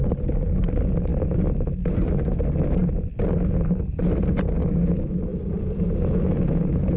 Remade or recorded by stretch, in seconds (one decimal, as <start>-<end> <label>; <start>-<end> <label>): 0.0-7.0 recorded